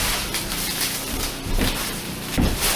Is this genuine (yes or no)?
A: no